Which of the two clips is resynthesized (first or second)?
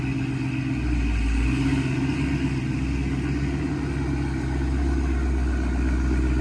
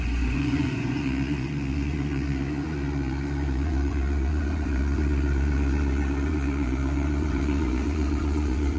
second